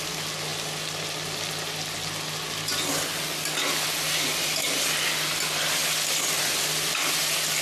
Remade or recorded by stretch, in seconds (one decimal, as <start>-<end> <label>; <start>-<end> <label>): 0.0-7.6 recorded

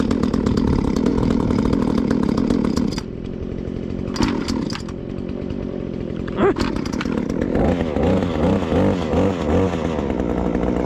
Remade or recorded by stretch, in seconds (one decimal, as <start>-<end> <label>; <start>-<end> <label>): 0.0-1.1 recorded; 1.1-1.6 remade; 1.6-10.9 recorded

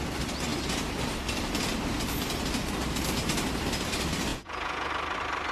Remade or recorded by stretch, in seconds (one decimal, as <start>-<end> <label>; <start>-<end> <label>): 0.0-4.3 recorded; 4.3-4.9 remade; 4.9-5.5 recorded

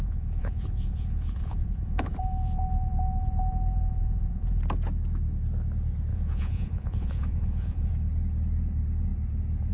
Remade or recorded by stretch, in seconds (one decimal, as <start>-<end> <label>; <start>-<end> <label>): 0.0-4.6 remade; 4.6-6.1 recorded; 6.1-7.9 remade; 7.9-9.7 recorded

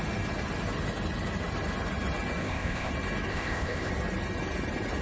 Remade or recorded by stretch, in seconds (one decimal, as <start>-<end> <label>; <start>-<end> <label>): 0.0-2.4 recorded; 2.4-2.9 remade; 2.9-3.3 recorded; 3.3-3.9 remade; 3.9-5.0 recorded

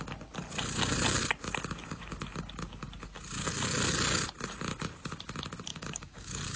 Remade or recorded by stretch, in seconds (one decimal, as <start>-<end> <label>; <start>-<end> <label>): 0.0-5.7 recorded; 5.7-6.6 remade

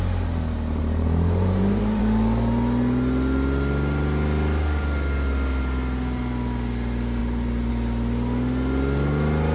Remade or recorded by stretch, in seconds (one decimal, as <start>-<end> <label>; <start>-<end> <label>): 0.0-0.8 recorded; 0.8-2.0 remade; 2.0-7.2 recorded; 7.2-7.7 remade; 7.7-9.5 recorded